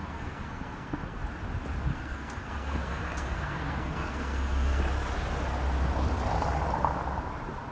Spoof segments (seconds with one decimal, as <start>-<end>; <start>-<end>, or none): 0.0-1.2; 1.9-4.8